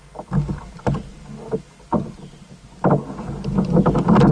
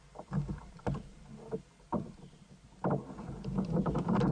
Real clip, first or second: first